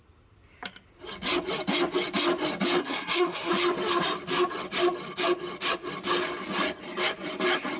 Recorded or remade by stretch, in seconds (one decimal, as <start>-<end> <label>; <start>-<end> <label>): 0.0-2.8 recorded; 2.8-3.5 remade; 3.5-7.8 recorded